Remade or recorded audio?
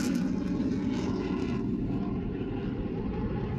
recorded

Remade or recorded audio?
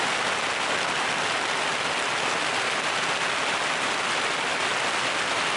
recorded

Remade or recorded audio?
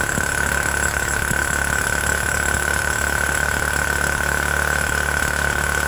remade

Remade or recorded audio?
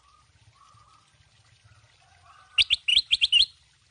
recorded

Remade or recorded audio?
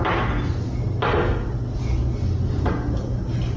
recorded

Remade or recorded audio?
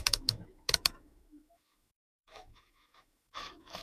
remade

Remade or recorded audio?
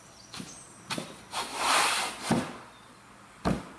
recorded